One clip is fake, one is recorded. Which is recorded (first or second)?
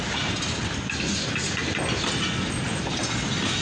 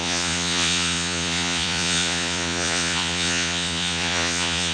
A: first